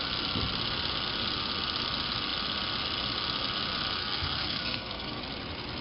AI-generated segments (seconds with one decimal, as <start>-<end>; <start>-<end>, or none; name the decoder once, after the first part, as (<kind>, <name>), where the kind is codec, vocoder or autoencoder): 4.0-5.2 (codec, SNAC)